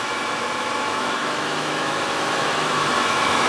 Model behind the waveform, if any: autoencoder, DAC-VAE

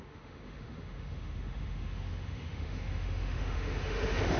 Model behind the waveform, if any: autoencoder, DAC-VAE